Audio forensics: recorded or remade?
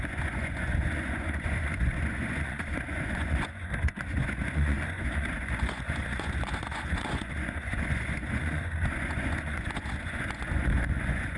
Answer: remade